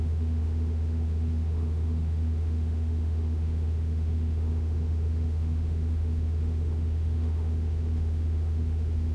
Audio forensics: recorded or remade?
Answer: remade